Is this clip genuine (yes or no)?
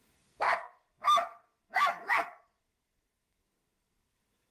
no